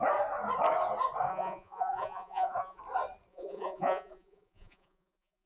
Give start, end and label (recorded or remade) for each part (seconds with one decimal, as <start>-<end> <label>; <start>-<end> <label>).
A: 0.0-1.3 recorded; 1.3-2.8 remade; 2.8-3.3 recorded; 3.3-5.5 remade